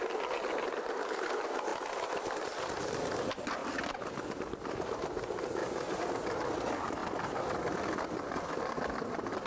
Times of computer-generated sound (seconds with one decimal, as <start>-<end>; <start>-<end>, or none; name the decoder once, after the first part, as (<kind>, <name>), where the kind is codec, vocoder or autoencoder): none